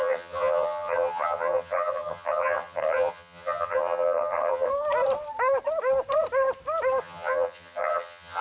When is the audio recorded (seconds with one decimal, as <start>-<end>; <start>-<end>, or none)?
4.7-7.0